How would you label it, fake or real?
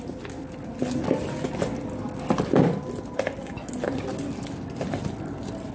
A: real